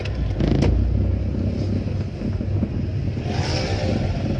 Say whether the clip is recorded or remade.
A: recorded